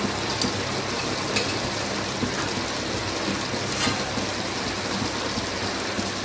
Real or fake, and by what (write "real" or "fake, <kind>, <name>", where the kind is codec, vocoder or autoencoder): real